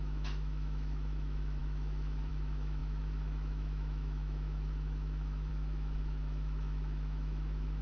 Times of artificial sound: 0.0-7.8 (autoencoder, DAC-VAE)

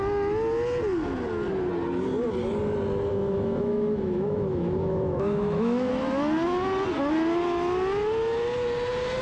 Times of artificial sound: 3.1-5.9 (autoencoder, DAC-VAE)